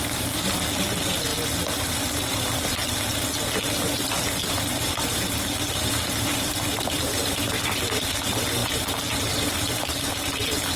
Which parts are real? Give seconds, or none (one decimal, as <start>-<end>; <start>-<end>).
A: 1.3-2.3; 2.8-3.8